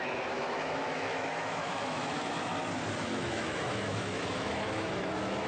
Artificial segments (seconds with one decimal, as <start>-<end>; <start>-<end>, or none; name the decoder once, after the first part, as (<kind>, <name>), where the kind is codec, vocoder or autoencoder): 0.0-2.5 (autoencoder, DAC-VAE); 3.0-5.5